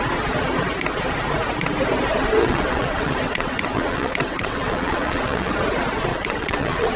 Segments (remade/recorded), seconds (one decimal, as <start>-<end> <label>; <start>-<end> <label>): 0.0-2.4 recorded; 2.4-5.5 remade; 5.5-6.1 recorded; 6.1-7.0 remade